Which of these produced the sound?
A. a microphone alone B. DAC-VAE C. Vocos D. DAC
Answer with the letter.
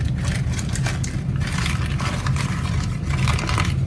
A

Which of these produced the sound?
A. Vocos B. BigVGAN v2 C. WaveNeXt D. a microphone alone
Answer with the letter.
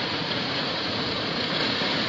A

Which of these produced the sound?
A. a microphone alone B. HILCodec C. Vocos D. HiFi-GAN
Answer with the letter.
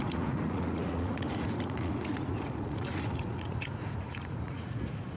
C